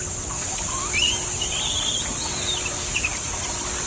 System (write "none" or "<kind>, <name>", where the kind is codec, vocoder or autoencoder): none